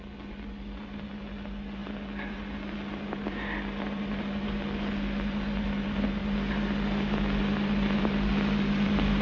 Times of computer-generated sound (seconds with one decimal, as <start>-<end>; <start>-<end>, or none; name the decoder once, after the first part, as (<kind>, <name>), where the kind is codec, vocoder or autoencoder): none